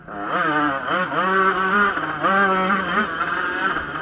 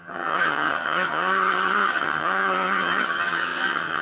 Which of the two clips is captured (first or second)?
first